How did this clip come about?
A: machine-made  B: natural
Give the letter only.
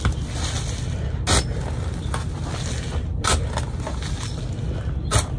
B